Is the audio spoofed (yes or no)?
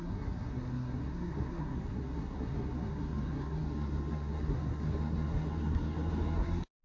yes